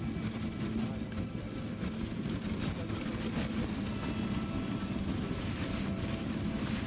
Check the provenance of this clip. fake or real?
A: real